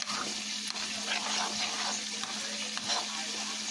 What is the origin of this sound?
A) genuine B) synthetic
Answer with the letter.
A